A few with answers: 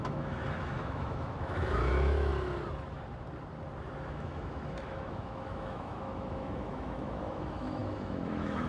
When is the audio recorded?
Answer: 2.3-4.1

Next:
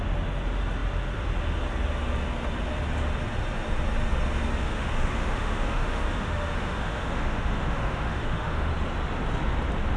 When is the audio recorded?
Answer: 0.0-4.5; 8.7-10.0

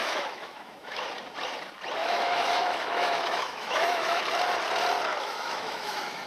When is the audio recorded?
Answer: 1.0-2.0; 4.2-5.1